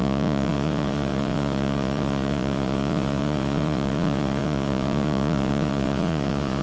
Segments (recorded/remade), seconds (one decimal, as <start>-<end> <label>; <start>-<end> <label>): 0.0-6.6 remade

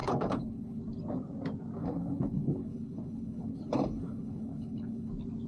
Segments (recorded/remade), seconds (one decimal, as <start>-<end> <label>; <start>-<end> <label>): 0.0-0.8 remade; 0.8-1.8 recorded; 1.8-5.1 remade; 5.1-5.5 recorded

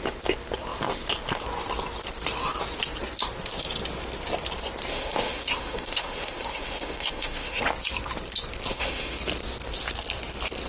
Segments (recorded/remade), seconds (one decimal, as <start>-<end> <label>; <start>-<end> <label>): 0.0-4.9 recorded; 4.9-7.6 remade; 7.6-8.7 recorded; 8.7-9.2 remade; 9.2-10.7 recorded